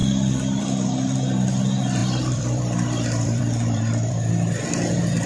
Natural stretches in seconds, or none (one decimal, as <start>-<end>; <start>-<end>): 0.0-2.0; 4.3-5.3